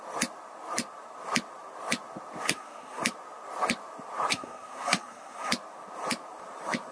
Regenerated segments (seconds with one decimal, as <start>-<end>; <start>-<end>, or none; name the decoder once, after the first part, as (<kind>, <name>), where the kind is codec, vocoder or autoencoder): 2.4-3.0 (codec, SNAC); 4.3-5.5

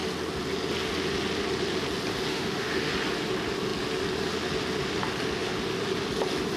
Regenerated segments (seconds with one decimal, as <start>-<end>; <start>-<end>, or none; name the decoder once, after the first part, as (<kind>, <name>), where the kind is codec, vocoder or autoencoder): 2.3-2.9 (autoencoder, DAC-VAE)

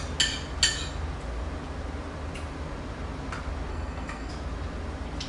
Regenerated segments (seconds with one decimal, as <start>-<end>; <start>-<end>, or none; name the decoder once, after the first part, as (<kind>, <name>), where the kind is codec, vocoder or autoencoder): 3.7-4.3 (codec, SNAC)

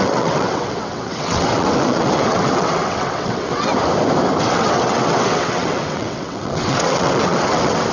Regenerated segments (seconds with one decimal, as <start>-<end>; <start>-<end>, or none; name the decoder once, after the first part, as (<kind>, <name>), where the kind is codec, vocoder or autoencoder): 0.0-3.7 (vocoder, WaveNeXt); 4.4-7.9